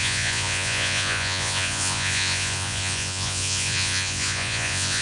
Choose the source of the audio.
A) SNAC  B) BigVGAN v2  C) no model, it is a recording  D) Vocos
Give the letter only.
D